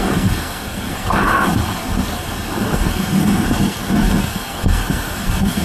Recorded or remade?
remade